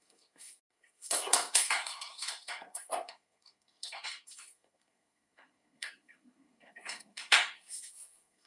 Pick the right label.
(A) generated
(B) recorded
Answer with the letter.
A